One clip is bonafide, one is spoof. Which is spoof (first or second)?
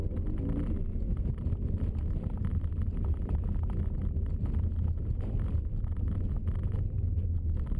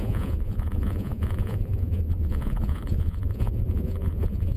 second